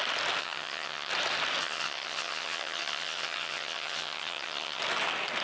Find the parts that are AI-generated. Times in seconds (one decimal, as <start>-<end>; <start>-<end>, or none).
0.4-1.1; 1.6-4.8

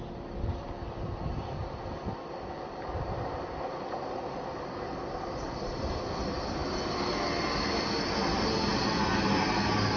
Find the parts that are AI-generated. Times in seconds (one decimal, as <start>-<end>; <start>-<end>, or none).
none

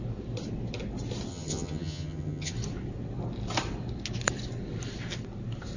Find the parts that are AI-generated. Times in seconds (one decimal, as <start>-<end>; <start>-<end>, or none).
1.3-2.5

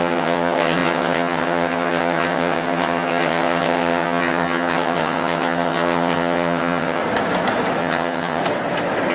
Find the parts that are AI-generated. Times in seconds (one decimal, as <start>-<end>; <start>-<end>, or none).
0.0-7.0; 7.8-8.4